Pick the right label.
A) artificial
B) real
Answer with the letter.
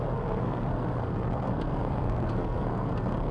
A